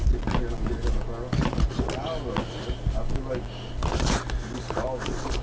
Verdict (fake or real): real